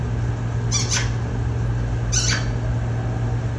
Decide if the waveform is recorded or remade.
recorded